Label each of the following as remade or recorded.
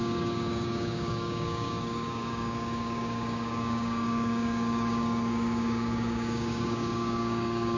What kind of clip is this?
remade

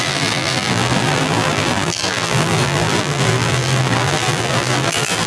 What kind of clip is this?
remade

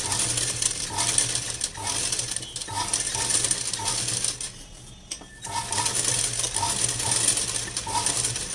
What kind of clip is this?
recorded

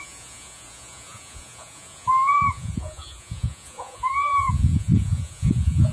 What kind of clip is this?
remade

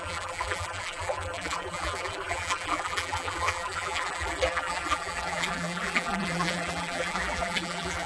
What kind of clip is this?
remade